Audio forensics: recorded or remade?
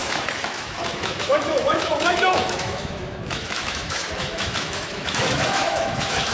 remade